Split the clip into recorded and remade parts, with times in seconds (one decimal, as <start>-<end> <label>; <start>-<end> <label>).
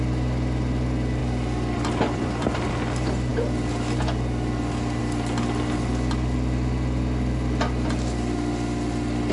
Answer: 0.0-1.2 recorded; 1.2-2.7 remade; 2.7-9.3 recorded